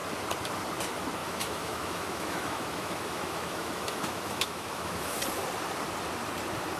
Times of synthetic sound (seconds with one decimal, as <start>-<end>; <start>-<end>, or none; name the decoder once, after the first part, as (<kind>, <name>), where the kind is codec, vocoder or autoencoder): 1.2-5.2 (autoencoder, DAC-VAE)